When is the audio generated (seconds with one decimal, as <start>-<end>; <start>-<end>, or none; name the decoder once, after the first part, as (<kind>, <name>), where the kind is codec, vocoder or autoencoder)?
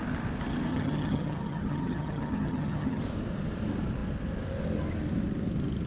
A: 0.7-3.0 (vocoder, HiFi-GAN)